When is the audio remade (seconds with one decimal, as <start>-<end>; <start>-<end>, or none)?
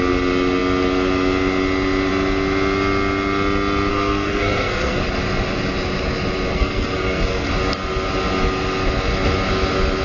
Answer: 3.9-5.0; 6.5-7.5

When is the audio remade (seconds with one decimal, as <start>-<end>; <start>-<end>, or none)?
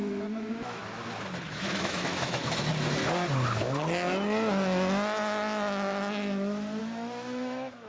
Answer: 0.0-0.8; 1.5-2.4; 6.8-7.9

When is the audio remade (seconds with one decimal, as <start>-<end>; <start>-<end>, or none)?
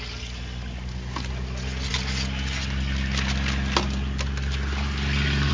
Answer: none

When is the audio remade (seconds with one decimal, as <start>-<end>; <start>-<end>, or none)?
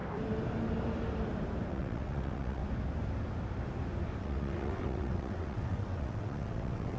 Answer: 1.7-2.6; 4.2-7.0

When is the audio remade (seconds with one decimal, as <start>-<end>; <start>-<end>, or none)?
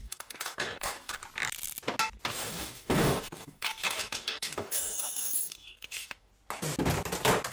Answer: 0.0-1.2; 2.3-6.3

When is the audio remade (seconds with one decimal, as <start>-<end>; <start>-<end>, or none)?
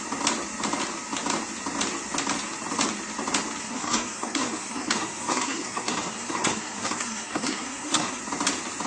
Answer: 3.6-8.2